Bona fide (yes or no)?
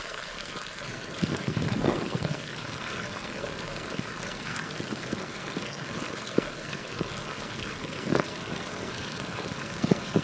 no